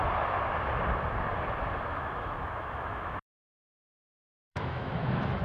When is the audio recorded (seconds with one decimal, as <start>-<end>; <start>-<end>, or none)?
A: 0.0-1.9